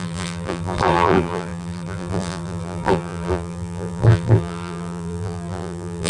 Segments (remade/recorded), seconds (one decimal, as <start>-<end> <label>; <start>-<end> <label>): 0.0-6.1 remade